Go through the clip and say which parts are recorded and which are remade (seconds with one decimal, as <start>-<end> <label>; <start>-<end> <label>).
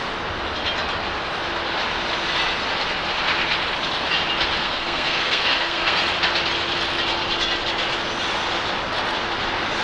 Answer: 0.0-4.6 recorded; 4.6-6.0 remade; 6.0-9.8 recorded